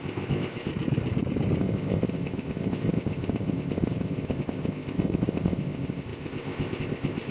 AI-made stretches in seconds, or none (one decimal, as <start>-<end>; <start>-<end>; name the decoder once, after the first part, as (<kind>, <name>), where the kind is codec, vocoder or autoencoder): 0.0-0.7 (codec, ZipCodec); 1.6-7.3